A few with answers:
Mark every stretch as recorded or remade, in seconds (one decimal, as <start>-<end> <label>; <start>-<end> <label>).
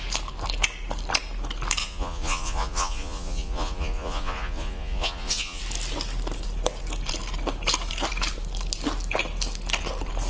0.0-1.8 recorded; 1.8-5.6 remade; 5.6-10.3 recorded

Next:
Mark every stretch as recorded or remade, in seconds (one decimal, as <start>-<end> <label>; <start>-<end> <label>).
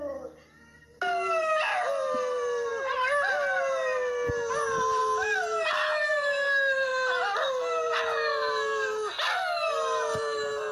0.0-10.7 recorded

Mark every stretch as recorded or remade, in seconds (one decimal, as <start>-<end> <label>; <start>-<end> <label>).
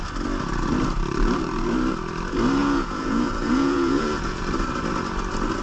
0.0-2.6 recorded; 2.6-4.4 remade; 4.4-5.6 recorded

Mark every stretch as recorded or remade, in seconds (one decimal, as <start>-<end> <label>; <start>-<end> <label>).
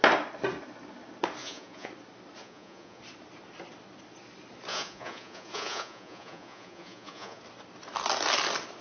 0.0-1.4 recorded; 1.4-1.9 remade; 1.9-2.4 recorded; 2.4-3.0 remade; 3.0-4.7 recorded; 4.7-7.4 remade; 7.4-8.8 recorded